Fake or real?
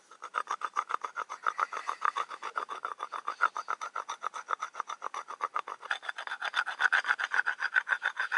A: real